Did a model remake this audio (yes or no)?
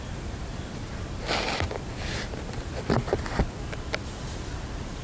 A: no